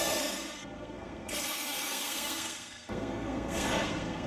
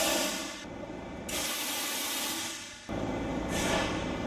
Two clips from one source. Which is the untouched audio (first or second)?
second